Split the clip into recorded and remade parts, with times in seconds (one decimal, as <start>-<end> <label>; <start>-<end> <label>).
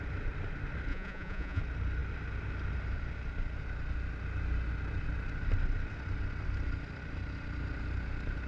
0.0-0.9 recorded; 0.9-1.6 remade; 1.6-8.5 recorded